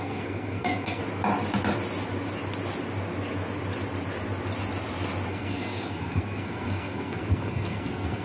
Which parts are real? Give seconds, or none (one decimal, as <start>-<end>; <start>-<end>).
1.0-5.3